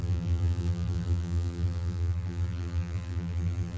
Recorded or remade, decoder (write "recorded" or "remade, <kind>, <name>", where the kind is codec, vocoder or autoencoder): remade, vocoder, BigVGAN v2